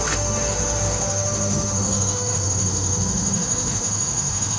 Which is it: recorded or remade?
remade